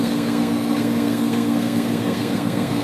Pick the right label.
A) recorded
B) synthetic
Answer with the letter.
B